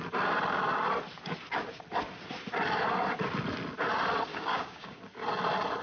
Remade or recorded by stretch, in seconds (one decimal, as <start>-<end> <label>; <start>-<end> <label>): 0.0-4.3 recorded; 4.3-5.0 remade; 5.0-5.8 recorded